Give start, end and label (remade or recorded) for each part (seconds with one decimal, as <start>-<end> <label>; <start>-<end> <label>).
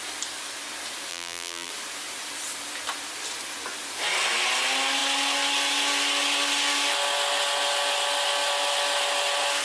0.0-1.1 recorded; 1.1-1.7 remade; 1.7-9.6 recorded